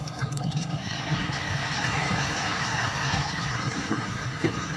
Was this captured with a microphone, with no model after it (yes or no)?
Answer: no